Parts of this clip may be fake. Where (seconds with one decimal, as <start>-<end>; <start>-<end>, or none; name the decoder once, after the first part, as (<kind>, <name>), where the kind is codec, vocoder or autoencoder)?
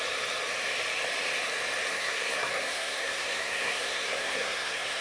1.9-5.0 (codec, SNAC)